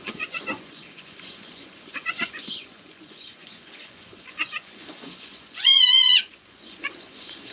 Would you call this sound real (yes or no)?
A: no